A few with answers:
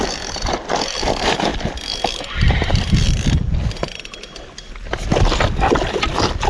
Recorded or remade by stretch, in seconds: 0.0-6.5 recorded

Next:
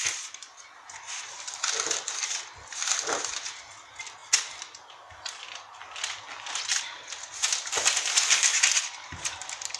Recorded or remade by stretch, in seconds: 0.0-9.8 recorded